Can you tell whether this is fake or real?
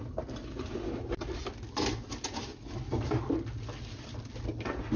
real